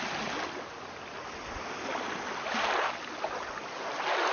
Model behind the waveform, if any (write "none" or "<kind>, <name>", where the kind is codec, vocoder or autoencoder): none